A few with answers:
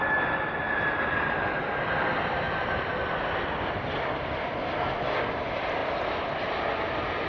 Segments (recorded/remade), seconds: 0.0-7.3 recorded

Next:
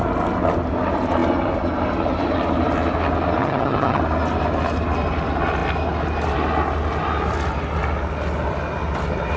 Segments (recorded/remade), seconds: 0.0-3.4 recorded; 3.4-4.0 remade; 4.0-9.4 recorded

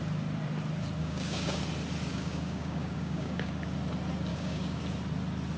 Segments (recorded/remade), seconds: 0.0-1.0 recorded; 1.0-1.6 remade; 1.6-2.1 recorded; 2.1-3.5 remade; 3.5-4.3 recorded; 4.3-4.8 remade; 4.8-5.6 recorded

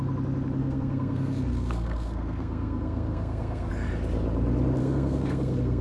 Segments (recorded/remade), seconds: 0.0-0.6 recorded; 0.6-3.7 remade; 3.7-4.8 recorded; 4.8-5.8 remade

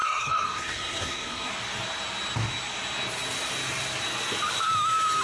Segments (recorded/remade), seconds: 0.0-1.5 remade; 1.5-5.2 recorded

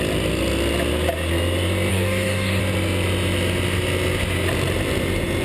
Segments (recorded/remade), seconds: 0.0-1.9 recorded; 1.9-2.6 remade; 2.6-5.4 recorded

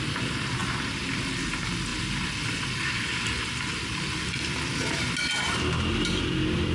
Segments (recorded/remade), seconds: 0.0-6.7 recorded

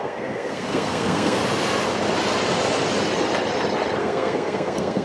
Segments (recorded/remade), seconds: 0.0-1.4 remade; 1.4-4.0 recorded; 4.0-5.0 remade